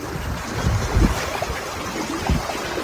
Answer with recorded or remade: recorded